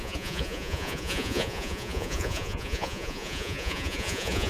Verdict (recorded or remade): remade